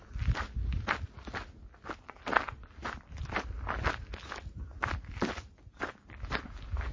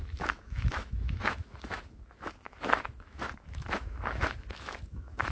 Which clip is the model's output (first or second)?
second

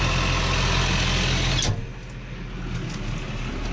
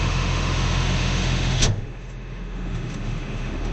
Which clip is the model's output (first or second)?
second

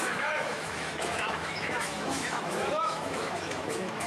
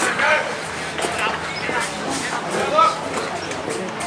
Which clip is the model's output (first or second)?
first